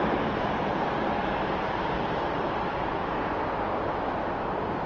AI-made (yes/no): no